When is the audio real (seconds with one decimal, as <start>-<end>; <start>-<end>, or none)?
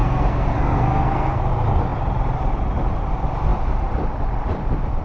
1.4-5.0